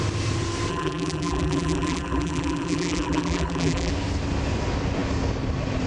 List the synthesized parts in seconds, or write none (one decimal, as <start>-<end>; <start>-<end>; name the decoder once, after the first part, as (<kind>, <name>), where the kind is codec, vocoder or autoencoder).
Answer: 0.7-3.9 (vocoder, BigVGAN v2)